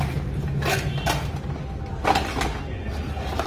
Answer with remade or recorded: recorded